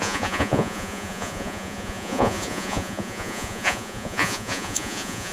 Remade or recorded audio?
remade